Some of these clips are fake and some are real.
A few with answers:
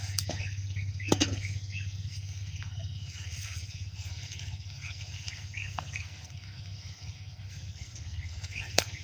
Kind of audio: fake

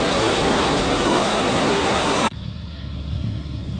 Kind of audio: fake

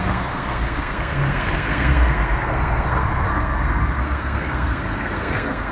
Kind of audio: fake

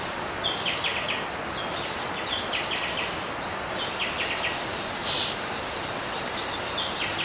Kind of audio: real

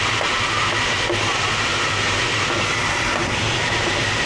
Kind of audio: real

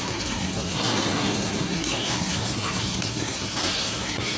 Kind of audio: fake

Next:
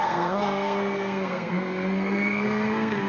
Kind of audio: fake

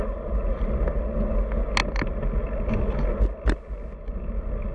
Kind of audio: real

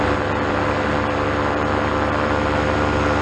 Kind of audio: real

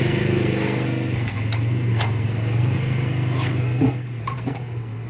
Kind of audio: fake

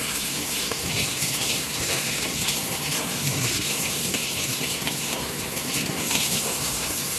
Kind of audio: fake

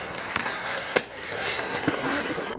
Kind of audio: fake